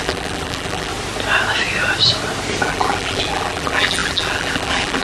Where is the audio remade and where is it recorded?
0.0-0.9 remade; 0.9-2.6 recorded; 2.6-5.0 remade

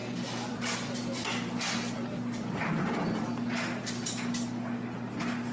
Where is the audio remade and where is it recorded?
0.0-3.3 remade; 3.3-5.5 recorded

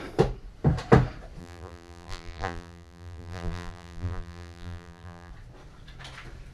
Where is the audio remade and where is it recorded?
0.0-1.4 recorded; 1.4-5.3 remade; 5.3-6.5 recorded

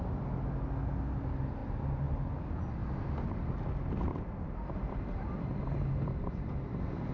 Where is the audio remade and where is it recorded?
0.0-1.6 recorded; 1.6-2.4 remade; 2.4-4.1 recorded; 4.1-7.1 remade